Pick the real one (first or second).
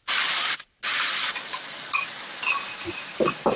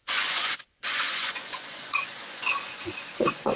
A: first